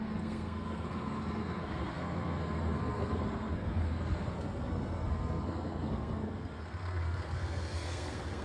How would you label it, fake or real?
fake